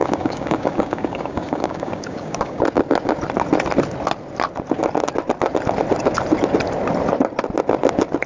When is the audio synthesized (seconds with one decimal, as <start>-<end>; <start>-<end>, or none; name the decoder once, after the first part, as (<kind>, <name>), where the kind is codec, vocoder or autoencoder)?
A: 0.0-2.6 (codec, DAC)